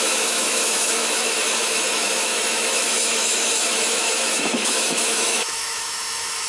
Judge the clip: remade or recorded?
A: remade